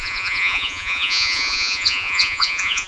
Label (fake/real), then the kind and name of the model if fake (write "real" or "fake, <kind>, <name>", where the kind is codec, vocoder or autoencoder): fake, vocoder, Vocos